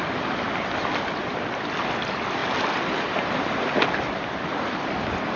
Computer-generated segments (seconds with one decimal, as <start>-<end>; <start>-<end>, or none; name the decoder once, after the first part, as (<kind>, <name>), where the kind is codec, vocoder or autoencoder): none